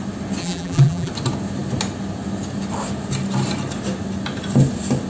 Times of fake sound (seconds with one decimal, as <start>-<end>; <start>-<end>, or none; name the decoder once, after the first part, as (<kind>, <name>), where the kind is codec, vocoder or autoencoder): 0.4-1.1 (vocoder, BigVGAN v2)